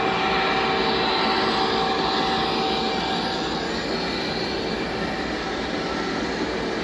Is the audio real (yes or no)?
yes